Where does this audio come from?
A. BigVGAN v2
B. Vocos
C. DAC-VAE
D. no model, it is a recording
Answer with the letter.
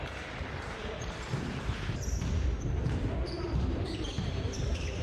A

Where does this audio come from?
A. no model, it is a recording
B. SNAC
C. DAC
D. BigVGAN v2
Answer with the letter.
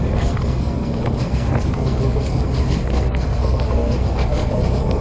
B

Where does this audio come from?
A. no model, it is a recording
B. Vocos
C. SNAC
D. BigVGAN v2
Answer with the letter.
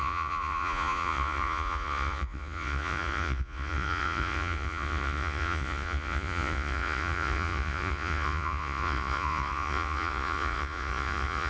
B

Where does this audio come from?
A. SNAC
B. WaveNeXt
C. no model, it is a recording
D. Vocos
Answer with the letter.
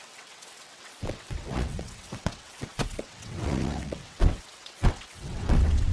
B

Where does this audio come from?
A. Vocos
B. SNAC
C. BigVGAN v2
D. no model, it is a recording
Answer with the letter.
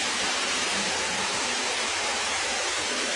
C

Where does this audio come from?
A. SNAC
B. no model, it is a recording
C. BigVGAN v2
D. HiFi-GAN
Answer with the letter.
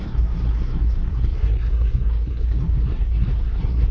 A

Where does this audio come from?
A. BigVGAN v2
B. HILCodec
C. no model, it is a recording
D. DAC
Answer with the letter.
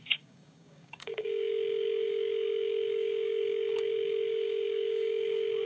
D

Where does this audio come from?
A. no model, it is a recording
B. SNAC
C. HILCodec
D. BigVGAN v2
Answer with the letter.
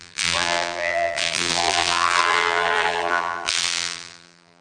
D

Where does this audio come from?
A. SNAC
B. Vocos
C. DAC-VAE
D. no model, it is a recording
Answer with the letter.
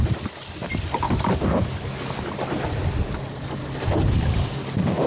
D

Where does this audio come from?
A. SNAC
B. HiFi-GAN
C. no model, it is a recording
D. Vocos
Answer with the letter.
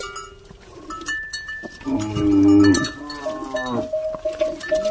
C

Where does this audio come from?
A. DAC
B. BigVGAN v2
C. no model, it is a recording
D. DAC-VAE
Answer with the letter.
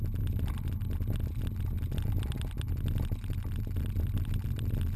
C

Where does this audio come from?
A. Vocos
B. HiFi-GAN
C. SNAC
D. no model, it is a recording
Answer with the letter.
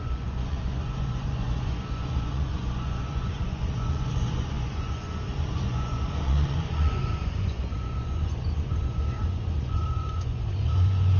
A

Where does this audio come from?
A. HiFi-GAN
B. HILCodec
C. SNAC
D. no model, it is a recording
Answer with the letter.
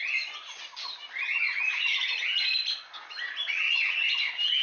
D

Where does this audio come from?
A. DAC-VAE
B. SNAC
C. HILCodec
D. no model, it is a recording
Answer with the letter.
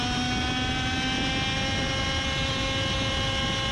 D